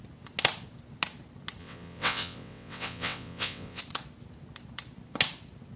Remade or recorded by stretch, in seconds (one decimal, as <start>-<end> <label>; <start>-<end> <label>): 0.0-1.6 recorded; 1.6-3.8 remade; 3.8-5.8 recorded